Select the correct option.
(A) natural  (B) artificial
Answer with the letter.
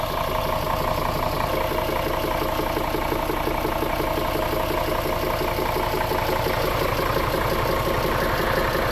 A